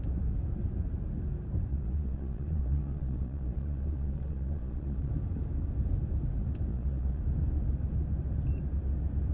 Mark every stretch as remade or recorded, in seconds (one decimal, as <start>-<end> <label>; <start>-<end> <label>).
0.0-1.7 recorded; 1.7-5.1 remade; 5.1-6.7 recorded; 6.7-7.2 remade; 7.2-9.3 recorded